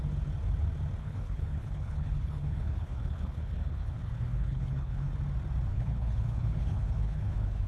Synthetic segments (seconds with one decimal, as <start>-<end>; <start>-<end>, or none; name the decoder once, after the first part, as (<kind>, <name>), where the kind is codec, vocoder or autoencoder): 1.0-5.1 (codec, HILCodec); 5.7-7.7